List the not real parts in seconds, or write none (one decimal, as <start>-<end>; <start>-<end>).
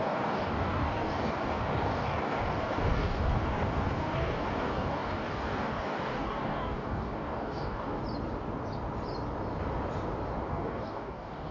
0.0-8.0; 10.5-11.5